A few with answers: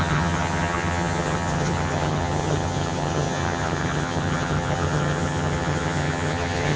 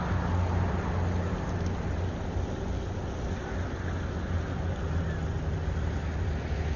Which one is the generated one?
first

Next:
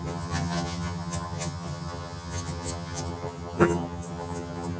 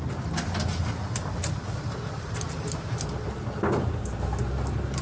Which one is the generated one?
first